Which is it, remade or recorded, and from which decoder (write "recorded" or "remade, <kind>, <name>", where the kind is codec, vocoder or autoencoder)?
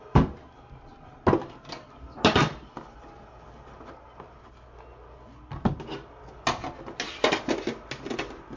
recorded